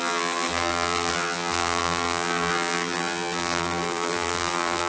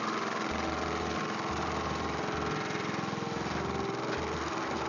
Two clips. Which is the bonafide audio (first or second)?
second